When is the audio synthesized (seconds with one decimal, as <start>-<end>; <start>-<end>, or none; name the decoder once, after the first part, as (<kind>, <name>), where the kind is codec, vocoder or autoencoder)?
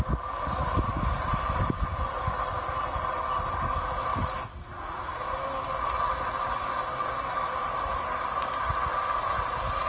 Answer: none